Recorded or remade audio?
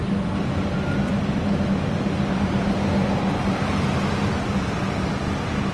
recorded